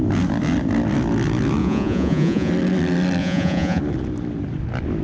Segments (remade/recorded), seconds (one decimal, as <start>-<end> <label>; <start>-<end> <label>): 0.0-1.6 recorded; 1.6-2.5 remade; 2.5-3.2 recorded; 3.2-3.8 remade; 3.8-5.0 recorded